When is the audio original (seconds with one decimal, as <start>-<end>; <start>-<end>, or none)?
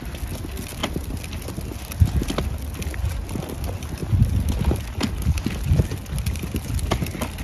0.0-7.4